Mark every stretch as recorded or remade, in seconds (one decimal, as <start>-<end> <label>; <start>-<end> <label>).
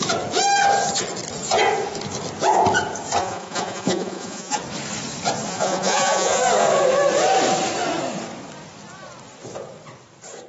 0.0-3.2 recorded; 3.2-4.6 remade; 4.6-5.5 recorded; 5.5-6.4 remade; 6.4-10.5 recorded